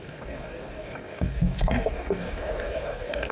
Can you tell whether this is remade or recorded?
remade